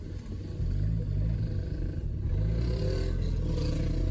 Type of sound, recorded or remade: recorded